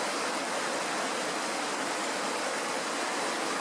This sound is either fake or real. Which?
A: real